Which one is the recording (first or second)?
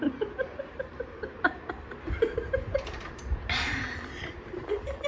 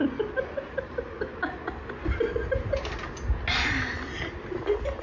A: second